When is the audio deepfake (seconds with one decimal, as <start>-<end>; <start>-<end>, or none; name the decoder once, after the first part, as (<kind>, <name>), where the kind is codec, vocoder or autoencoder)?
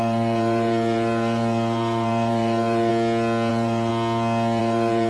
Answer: 0.0-2.9 (vocoder, BigVGAN v2); 3.5-3.9; 4.6-5.1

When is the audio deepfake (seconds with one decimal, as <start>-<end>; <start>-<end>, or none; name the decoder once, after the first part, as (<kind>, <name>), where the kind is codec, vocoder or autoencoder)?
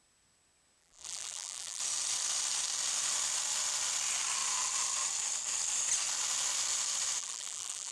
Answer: 0.8-1.8 (vocoder, BigVGAN v2); 7.2-7.9